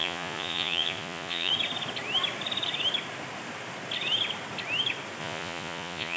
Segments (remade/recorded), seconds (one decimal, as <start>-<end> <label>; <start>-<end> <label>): 0.0-1.5 remade; 1.5-5.2 recorded; 5.2-6.2 remade